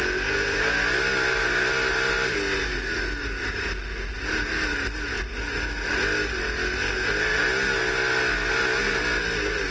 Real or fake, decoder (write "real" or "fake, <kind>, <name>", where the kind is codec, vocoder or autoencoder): real